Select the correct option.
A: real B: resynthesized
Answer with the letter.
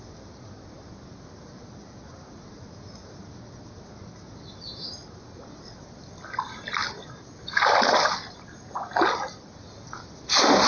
A